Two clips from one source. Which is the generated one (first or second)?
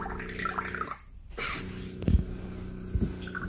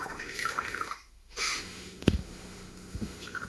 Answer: second